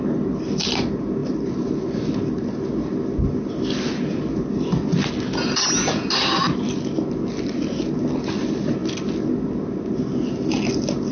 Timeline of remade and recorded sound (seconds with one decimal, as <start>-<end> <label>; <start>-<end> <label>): 0.0-11.1 recorded